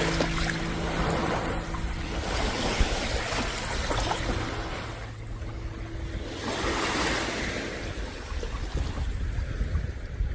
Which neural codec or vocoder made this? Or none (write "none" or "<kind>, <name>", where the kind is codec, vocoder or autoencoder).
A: none